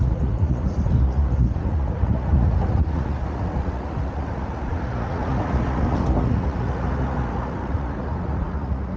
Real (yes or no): no